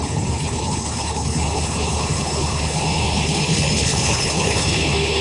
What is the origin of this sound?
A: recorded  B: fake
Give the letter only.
B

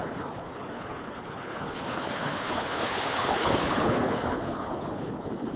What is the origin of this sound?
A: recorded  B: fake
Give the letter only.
B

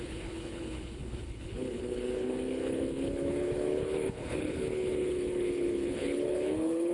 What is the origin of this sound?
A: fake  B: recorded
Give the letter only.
A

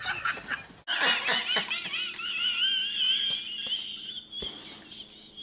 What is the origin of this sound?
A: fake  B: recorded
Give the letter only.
B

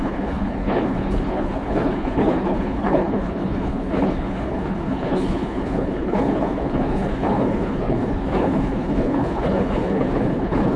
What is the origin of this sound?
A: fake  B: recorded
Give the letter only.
A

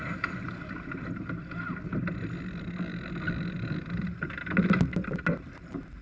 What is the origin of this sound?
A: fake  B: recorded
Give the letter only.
B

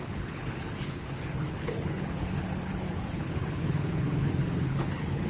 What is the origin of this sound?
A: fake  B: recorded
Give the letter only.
A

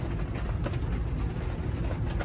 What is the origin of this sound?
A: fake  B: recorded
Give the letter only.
B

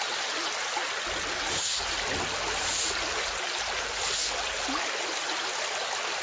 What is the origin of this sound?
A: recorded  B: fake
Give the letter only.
A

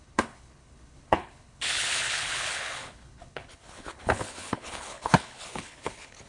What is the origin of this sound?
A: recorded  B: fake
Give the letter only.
B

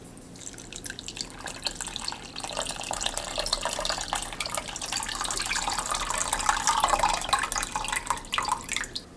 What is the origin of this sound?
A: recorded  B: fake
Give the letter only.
A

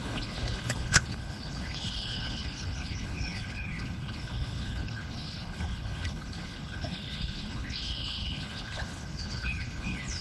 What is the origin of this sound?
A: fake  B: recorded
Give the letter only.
A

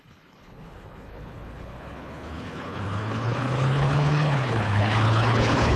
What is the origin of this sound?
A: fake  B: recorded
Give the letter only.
A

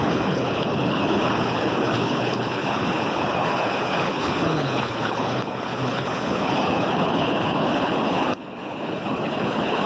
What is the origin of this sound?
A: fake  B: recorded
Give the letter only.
A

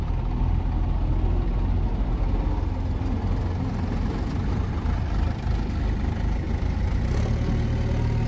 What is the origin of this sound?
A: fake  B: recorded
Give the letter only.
B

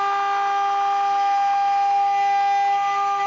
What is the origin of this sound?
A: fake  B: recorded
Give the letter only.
B